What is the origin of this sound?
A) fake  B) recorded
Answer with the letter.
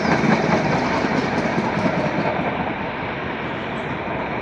B